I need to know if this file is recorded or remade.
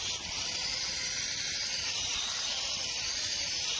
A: remade